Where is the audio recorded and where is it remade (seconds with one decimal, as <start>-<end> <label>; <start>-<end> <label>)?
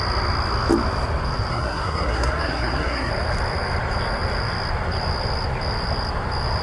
0.0-1.5 recorded; 1.5-3.1 remade; 3.1-6.6 recorded